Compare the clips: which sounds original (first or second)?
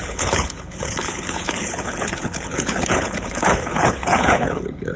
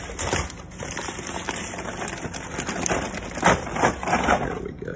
second